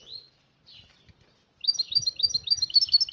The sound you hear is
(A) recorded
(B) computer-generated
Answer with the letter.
A